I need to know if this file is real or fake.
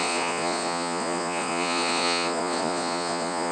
fake